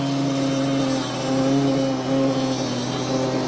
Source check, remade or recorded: recorded